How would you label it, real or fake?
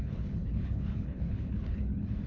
fake